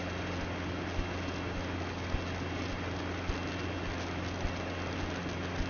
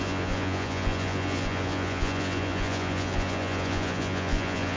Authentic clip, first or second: first